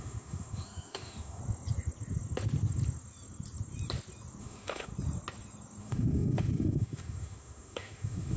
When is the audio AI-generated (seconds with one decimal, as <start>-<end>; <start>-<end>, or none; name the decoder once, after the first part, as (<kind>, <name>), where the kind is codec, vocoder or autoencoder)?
0.0-1.4 (autoencoder, DAC-VAE); 4.4-4.9; 5.8-8.4